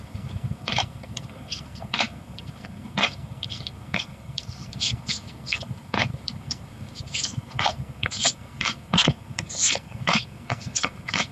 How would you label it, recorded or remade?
remade